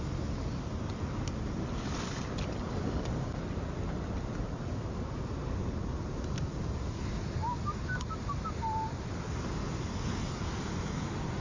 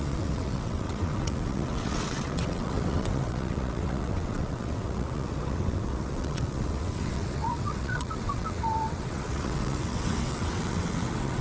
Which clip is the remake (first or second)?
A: second